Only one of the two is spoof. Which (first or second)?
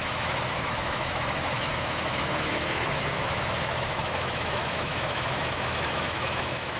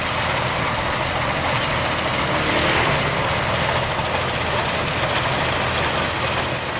first